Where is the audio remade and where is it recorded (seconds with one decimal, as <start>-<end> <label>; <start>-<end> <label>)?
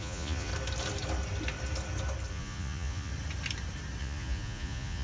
0.0-0.5 remade; 0.5-2.3 recorded; 2.3-3.1 remade; 3.1-4.0 recorded; 4.0-5.0 remade